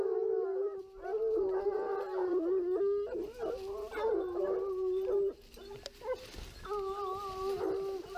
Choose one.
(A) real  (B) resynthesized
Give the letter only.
A